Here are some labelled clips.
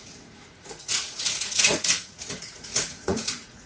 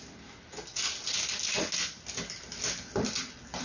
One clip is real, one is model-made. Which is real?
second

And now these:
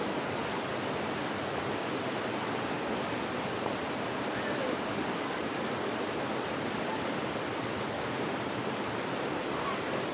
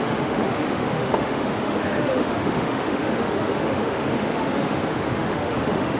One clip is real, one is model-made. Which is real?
first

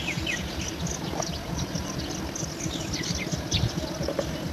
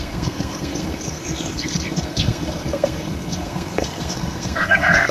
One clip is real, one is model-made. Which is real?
first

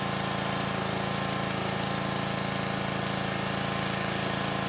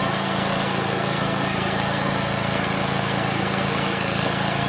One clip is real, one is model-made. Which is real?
first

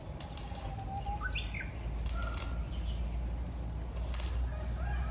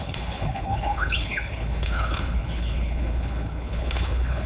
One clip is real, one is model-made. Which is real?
first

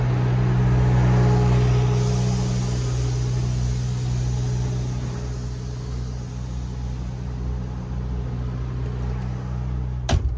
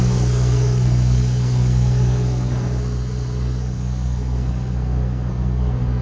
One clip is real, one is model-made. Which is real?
first